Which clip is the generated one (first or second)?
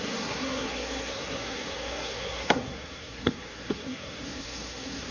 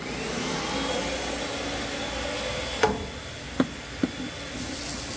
first